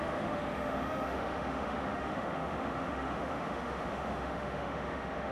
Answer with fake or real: fake